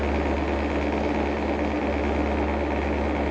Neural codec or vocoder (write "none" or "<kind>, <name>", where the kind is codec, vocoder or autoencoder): none